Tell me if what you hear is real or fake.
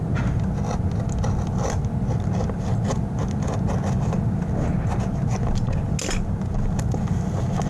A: real